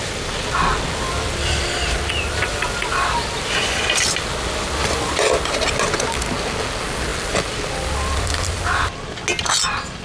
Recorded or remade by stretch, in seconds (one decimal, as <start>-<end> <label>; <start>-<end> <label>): 0.0-10.0 recorded